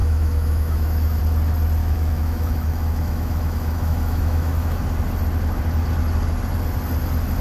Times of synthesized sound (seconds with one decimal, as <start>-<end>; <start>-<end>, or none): 0.0-1.2; 1.8-4.8